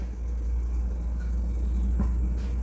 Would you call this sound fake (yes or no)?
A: no